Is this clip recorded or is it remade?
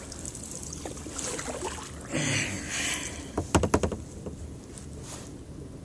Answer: recorded